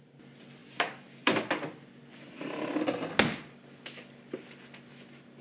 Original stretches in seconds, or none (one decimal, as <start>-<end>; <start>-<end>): 0.0-0.6; 1.4-5.4